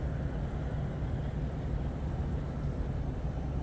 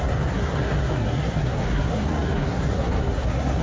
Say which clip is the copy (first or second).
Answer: second